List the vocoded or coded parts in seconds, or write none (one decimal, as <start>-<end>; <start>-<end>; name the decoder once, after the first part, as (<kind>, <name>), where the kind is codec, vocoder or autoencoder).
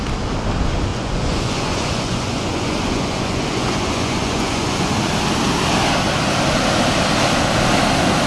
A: 0.9-4.9 (vocoder, Vocos)